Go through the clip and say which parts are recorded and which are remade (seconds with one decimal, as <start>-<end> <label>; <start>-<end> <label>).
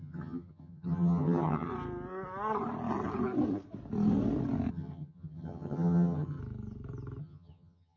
0.0-1.7 remade; 1.7-4.7 recorded; 4.7-6.4 remade; 6.4-7.2 recorded; 7.2-8.0 remade